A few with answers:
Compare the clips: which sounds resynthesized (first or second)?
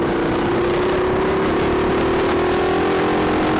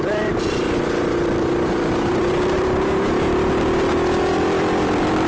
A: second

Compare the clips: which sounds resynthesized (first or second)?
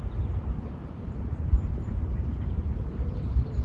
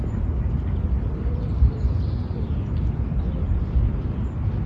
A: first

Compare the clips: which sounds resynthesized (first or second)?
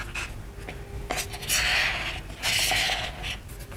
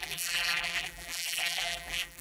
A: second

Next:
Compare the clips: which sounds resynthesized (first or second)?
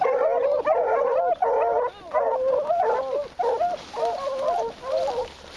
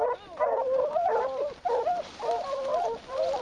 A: second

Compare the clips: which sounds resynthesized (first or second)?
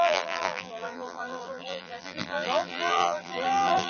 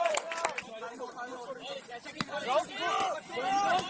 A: first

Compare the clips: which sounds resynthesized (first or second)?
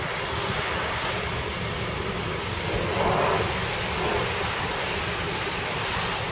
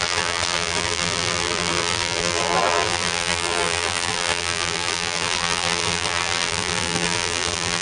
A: second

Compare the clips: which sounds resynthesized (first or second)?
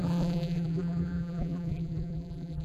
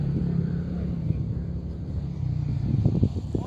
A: first